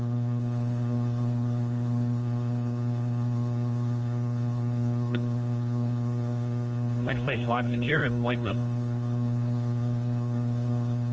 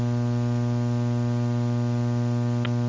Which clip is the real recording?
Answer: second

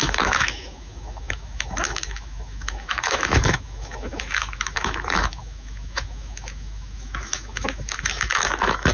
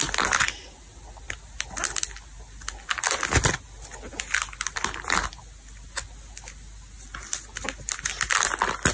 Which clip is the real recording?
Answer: second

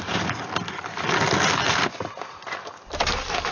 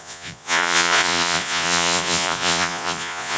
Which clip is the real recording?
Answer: first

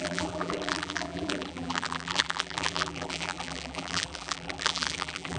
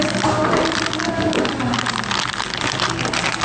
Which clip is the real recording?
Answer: second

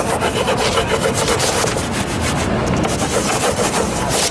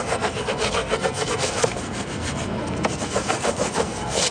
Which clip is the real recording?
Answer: first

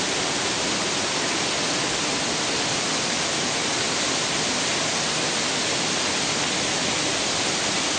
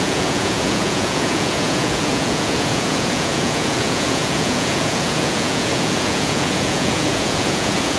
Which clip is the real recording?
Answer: first